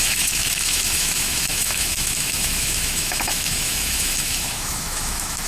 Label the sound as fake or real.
fake